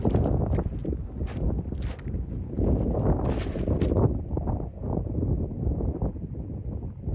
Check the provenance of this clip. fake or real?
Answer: real